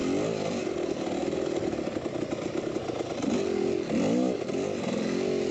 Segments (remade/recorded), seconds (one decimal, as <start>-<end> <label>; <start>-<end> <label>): 0.0-5.5 recorded